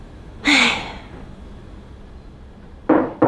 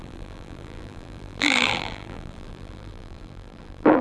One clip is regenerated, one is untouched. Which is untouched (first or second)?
first